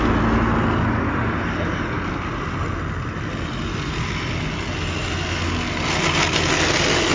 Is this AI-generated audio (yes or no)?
no